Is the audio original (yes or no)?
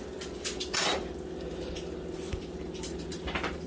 no